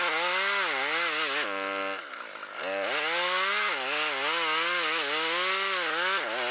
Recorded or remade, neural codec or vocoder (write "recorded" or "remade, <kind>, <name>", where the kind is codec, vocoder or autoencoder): recorded